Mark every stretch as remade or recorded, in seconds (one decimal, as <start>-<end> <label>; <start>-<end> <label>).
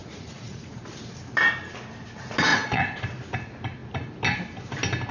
0.0-0.9 remade; 0.9-2.5 recorded; 2.5-3.0 remade; 3.0-5.1 recorded